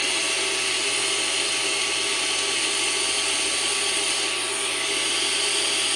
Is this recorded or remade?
recorded